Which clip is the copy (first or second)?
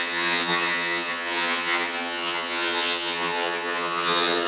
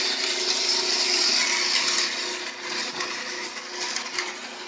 first